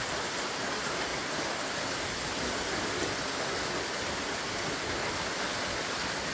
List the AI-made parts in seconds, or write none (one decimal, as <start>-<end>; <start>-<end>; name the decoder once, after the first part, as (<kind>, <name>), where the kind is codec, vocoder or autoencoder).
none